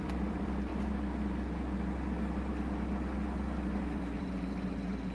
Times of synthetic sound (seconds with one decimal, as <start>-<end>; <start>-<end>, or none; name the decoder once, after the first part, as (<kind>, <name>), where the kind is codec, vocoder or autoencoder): 0.0-0.7 (vocoder, BigVGAN v2); 3.8-5.1